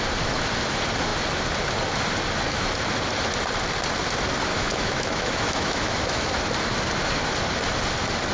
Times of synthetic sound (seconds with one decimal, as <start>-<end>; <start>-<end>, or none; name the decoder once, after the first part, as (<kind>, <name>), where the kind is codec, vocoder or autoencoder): 4.5-6.3 (autoencoder, DAC-VAE)

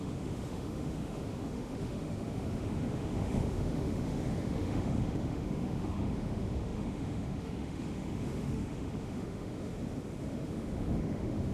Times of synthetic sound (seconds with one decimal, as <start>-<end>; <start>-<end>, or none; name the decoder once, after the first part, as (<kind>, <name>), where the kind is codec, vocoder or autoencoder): 0.0-9.7 (autoencoder, DAC-VAE); 10.2-11.5